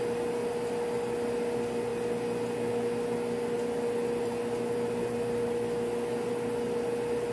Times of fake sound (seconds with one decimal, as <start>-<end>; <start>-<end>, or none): none